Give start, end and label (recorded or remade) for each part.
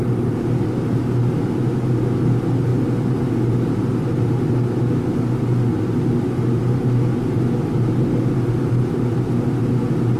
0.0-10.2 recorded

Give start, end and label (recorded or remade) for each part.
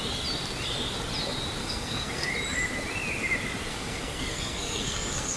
0.0-1.6 recorded; 1.6-2.3 remade; 2.3-3.7 recorded; 3.7-5.4 remade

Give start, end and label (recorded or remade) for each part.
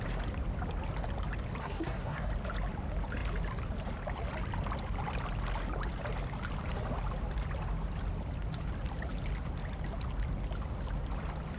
0.0-1.6 recorded; 1.6-2.3 remade; 2.3-11.6 recorded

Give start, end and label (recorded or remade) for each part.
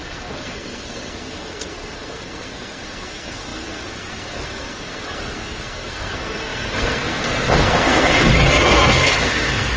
0.0-9.8 remade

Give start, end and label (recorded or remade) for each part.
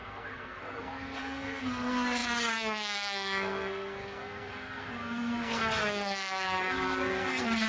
0.0-7.7 remade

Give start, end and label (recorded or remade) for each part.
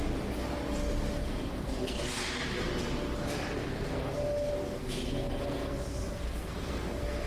0.0-1.2 recorded; 1.2-2.0 remade; 2.0-3.6 recorded; 3.6-7.3 remade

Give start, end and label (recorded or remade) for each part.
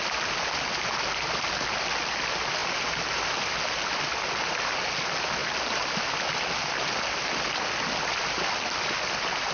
0.0-9.5 recorded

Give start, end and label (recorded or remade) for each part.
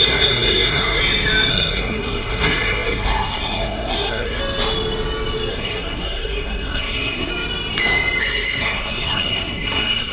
0.0-1.0 remade; 1.0-1.5 recorded; 1.5-4.4 remade; 4.4-5.5 recorded; 5.5-7.3 remade; 7.3-8.2 recorded; 8.2-10.1 remade